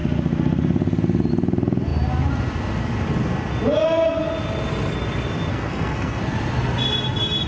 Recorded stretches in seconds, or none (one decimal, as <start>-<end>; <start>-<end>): 0.0-5.5; 6.2-7.5